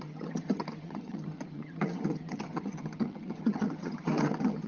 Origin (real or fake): fake